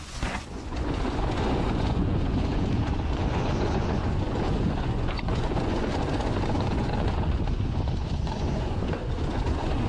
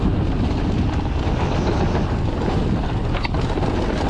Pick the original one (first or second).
second